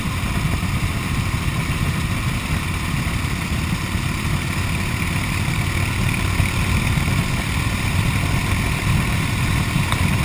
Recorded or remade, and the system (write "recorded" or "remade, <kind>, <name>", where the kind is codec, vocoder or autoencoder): remade, vocoder, BigVGAN v2